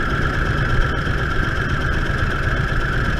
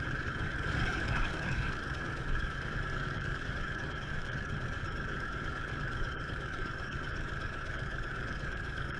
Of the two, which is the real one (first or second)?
first